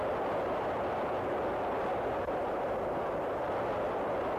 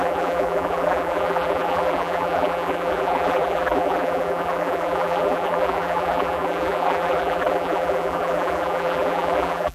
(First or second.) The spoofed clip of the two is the second